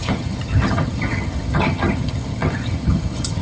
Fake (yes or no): yes